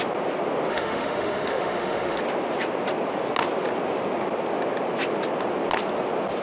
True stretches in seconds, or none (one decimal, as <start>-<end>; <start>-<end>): 0.0-0.7; 2.2-6.4